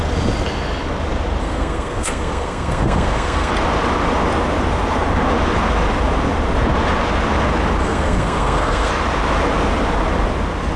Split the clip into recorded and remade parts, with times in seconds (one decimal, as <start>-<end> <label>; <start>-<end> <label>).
0.0-1.4 recorded; 1.4-3.5 remade; 3.5-7.8 recorded; 7.8-8.9 remade; 8.9-10.8 recorded